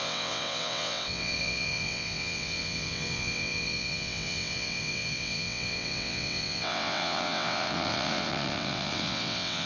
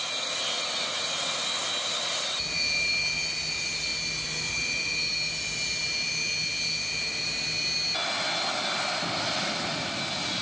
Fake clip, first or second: first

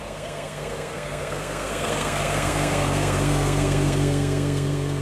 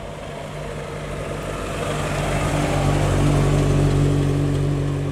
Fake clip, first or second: first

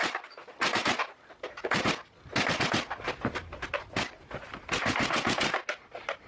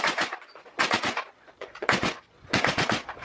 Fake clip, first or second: second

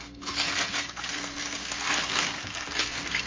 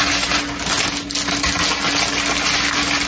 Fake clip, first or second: first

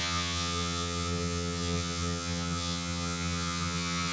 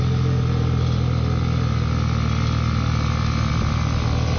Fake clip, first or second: first